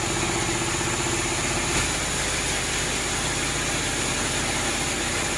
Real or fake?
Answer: real